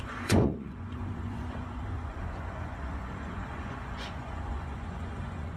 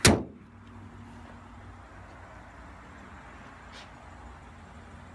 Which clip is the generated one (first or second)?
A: first